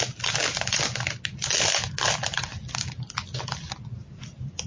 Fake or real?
real